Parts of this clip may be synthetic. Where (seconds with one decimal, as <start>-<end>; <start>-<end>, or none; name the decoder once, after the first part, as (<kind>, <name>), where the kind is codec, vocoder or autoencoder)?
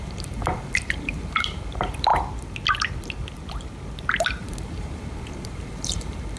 0.0-2.1 (vocoder, BigVGAN v2); 4.4-6.4